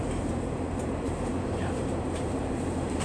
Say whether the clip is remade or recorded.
remade